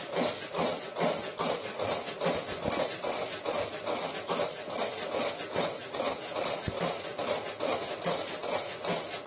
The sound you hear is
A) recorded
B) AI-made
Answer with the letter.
A